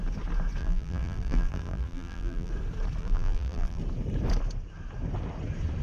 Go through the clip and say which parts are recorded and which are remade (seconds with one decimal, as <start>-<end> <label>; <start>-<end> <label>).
0.0-0.6 recorded; 0.6-2.5 remade; 2.5-3.0 recorded; 3.0-3.8 remade; 3.8-5.8 recorded